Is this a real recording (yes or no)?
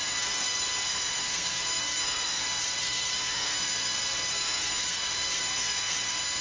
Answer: no